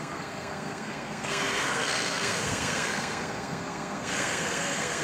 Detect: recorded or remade remade